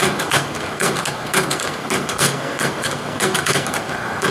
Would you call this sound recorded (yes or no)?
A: no